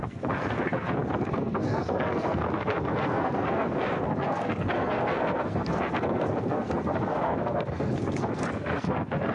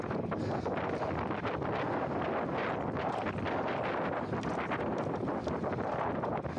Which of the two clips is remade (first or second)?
first